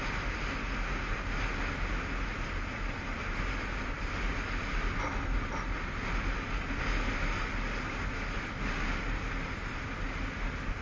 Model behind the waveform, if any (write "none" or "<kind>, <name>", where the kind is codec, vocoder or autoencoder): none